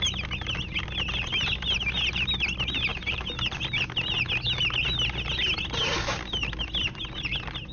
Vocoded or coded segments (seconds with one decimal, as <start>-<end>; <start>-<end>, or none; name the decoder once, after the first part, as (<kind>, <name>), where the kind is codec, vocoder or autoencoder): 2.9-3.6 (vocoder, BigVGAN v2)